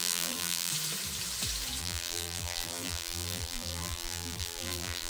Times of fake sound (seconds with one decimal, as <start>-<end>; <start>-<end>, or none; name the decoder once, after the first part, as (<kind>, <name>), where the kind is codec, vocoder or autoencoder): 0.0-0.7 (vocoder, BigVGAN v2); 1.8-5.1